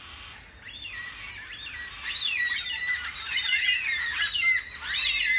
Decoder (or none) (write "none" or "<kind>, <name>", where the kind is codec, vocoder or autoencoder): none